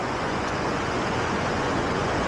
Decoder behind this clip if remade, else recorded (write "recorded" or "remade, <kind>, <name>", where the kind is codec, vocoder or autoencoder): remade, vocoder, Vocos